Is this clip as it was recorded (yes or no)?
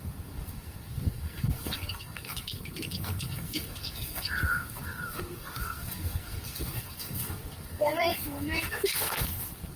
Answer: no